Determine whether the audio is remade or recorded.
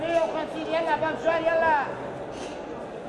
recorded